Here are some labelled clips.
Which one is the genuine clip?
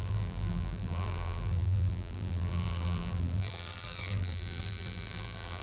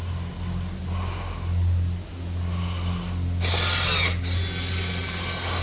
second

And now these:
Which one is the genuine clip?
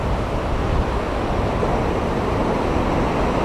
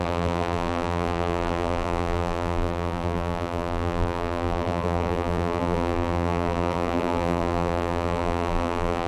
first